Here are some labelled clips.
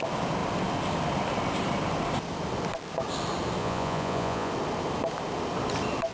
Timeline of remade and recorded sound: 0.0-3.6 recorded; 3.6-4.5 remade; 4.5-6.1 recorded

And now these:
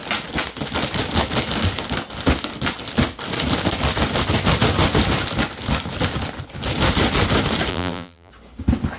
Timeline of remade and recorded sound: 0.0-7.7 recorded; 7.7-8.3 remade; 8.3-9.0 recorded

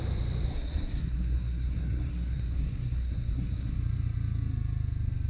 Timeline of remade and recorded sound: 0.0-0.5 recorded; 0.5-3.7 remade; 3.7-5.3 recorded

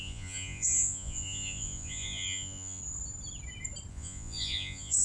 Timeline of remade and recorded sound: 0.0-2.8 remade; 2.8-3.9 recorded; 3.9-5.0 remade

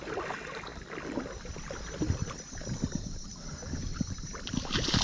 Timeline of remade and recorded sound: 0.0-5.0 recorded

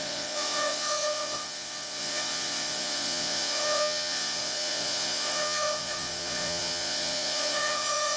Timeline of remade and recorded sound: 0.0-8.2 remade

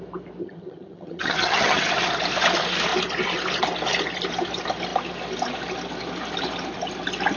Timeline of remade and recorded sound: 0.0-0.4 recorded; 0.4-1.9 remade; 1.9-7.4 recorded

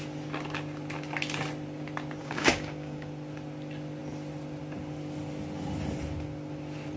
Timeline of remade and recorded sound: 0.0-2.2 recorded; 2.2-3.1 remade; 3.1-7.0 recorded